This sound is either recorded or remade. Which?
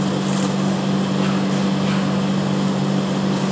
recorded